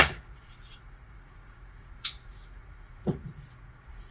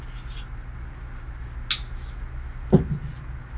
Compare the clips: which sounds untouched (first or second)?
second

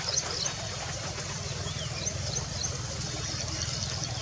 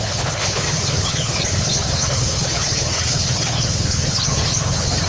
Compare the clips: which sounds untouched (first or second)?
first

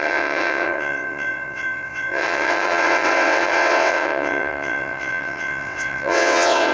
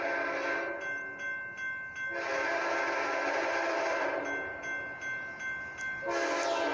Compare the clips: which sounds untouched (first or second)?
second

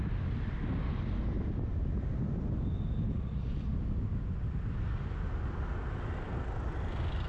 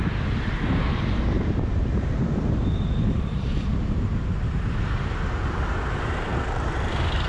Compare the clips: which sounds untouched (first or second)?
first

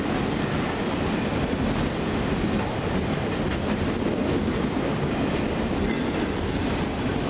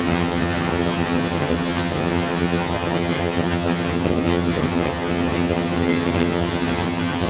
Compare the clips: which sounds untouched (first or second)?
first